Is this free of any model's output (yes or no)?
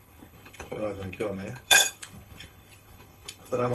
no